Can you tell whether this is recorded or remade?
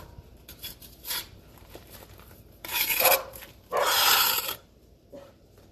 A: remade